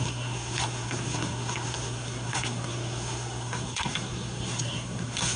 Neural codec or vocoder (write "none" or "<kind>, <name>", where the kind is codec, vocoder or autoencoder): codec, SNAC